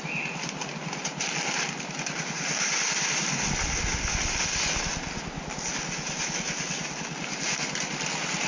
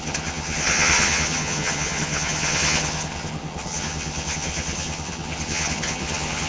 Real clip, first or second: first